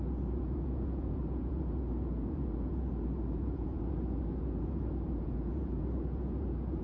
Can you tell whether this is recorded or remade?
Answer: remade